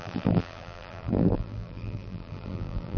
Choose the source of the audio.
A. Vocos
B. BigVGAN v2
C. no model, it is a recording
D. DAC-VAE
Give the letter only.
B